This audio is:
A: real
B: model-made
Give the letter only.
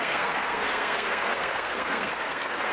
B